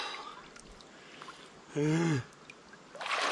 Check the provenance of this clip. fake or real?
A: real